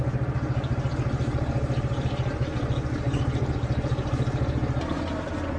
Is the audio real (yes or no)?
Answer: yes